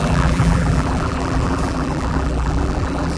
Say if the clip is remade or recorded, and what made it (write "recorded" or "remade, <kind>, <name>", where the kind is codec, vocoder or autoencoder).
remade, vocoder, BigVGAN v2